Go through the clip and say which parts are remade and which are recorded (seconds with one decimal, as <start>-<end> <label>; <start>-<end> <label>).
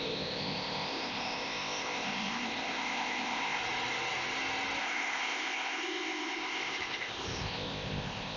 0.0-3.6 remade; 3.6-4.8 recorded; 4.8-8.4 remade